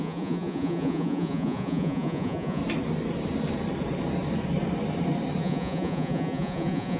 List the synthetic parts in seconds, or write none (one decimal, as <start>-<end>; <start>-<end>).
0.0-2.6; 5.4-7.0